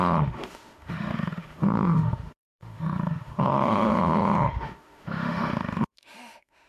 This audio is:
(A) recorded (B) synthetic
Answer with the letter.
B